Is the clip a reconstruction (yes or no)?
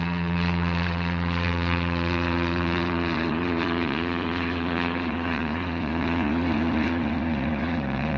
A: yes